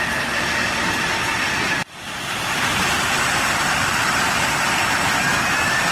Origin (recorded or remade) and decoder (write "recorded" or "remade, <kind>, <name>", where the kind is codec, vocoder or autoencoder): recorded